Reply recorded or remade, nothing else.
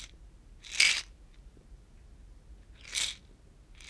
recorded